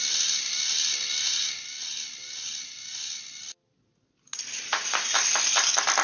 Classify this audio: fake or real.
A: real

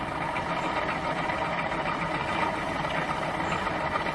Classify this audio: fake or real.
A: real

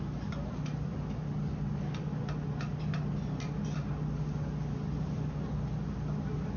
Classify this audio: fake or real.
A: real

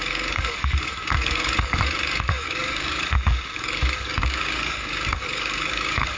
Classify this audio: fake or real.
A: fake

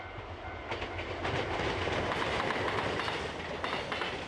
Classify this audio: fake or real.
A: real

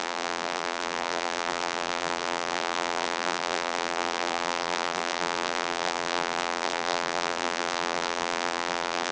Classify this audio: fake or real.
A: fake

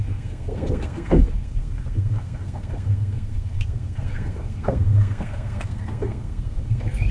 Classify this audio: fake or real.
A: fake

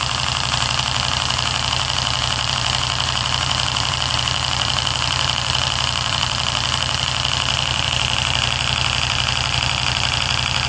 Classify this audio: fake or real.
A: fake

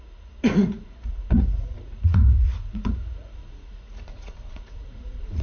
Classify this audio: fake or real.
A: fake